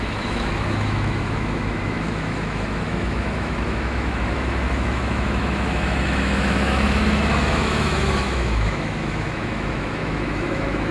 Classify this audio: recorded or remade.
remade